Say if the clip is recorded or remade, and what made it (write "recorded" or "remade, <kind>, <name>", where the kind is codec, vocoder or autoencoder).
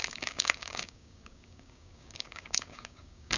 remade, codec, DAC